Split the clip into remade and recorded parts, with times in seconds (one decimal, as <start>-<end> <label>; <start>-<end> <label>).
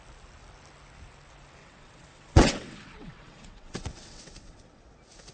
0.0-1.6 recorded; 1.6-4.8 remade; 4.8-5.3 recorded